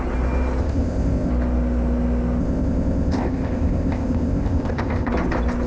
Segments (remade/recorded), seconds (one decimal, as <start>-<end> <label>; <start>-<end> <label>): 0.0-0.6 recorded; 0.6-1.3 remade; 1.3-2.4 recorded; 2.4-5.1 remade; 5.1-5.7 recorded